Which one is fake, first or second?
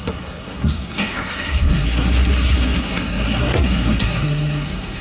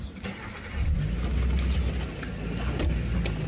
first